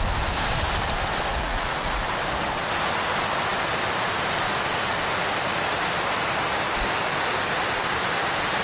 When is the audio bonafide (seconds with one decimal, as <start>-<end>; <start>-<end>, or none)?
0.0-1.3; 2.1-8.6